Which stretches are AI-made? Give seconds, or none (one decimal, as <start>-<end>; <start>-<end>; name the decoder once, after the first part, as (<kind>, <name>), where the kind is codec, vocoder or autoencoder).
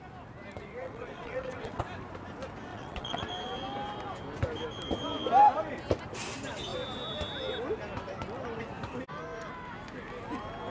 0.8-1.8 (vocoder, WaveNeXt); 2.7-3.2